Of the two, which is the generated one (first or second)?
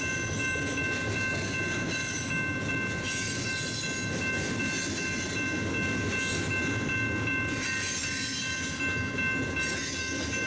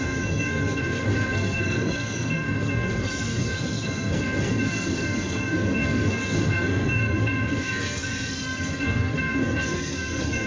second